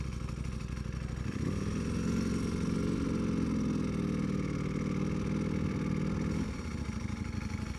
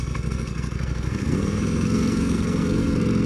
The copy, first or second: second